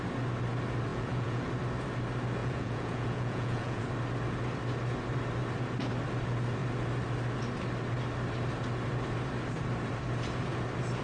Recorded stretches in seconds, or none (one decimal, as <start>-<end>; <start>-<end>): 0.0-0.9; 1.5-2.4; 3.8-11.0